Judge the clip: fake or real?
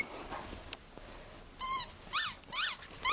real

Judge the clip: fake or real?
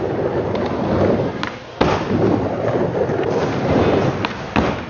real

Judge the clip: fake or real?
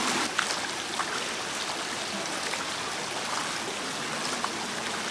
real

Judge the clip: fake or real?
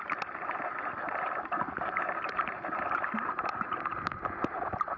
real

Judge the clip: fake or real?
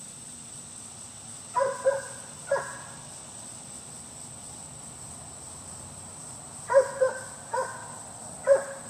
real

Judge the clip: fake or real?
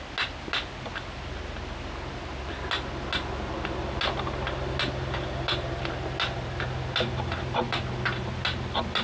real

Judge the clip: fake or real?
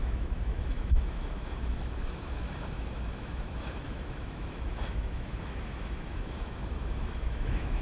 fake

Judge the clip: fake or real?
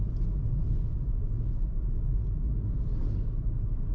real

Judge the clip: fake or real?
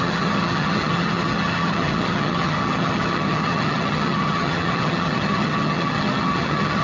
fake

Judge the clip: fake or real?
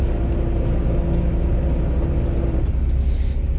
real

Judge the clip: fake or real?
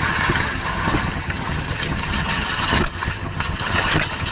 fake